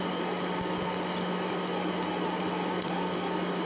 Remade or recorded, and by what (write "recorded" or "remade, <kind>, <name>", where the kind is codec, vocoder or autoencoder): recorded